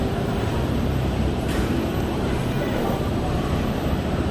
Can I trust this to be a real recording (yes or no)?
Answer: no